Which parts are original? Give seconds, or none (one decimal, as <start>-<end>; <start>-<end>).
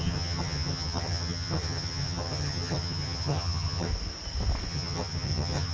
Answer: 3.9-4.7